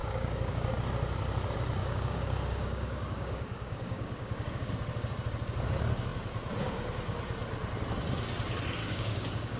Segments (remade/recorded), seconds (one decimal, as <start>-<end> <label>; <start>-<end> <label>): 0.0-0.7 remade; 0.7-1.8 recorded; 1.8-4.7 remade; 4.7-8.8 recorded; 8.8-9.6 remade